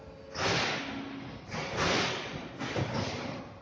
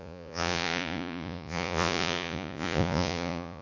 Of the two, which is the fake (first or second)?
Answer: second